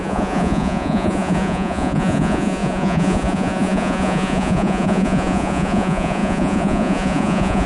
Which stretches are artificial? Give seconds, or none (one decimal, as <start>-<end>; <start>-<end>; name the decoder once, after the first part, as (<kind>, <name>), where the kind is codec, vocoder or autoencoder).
0.0-7.7 (vocoder, Vocos)